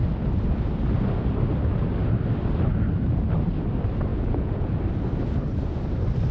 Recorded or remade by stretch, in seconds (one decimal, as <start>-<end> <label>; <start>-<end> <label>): 0.0-4.1 recorded; 4.1-4.8 remade; 4.8-6.3 recorded